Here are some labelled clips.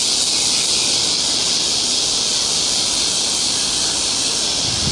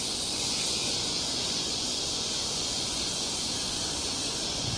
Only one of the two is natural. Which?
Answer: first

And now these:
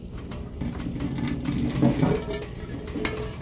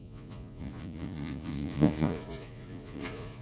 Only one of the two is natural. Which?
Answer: first